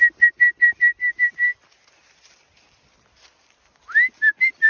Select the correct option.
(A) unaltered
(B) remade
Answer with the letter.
A